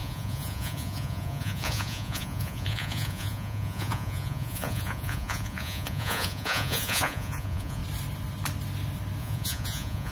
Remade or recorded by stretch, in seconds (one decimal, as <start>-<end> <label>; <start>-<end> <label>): 0.0-7.8 remade; 7.8-9.2 recorded; 9.2-10.1 remade